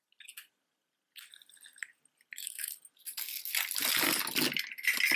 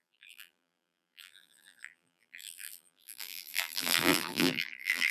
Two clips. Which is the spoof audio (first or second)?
second